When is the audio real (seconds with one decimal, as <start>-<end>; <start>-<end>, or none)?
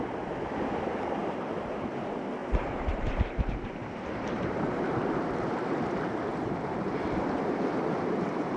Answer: 0.0-1.2; 1.9-2.4; 4.6-6.3; 6.9-8.6